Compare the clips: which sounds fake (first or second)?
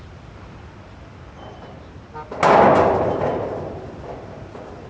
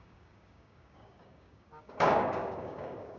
second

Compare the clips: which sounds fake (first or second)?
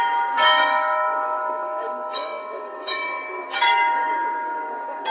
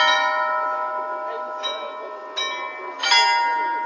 first